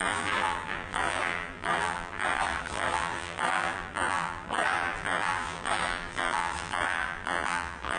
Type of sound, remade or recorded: remade